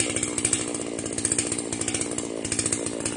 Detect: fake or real real